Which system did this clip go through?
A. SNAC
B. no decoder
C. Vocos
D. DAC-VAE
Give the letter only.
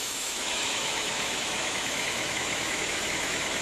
D